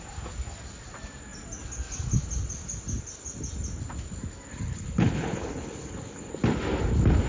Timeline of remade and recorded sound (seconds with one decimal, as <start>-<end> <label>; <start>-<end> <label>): 0.0-4.5 recorded; 4.5-6.3 remade; 6.3-7.3 recorded

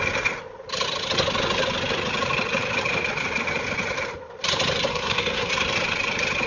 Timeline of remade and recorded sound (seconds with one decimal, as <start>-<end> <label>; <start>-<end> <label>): 0.0-4.9 recorded; 4.9-5.5 remade; 5.5-6.5 recorded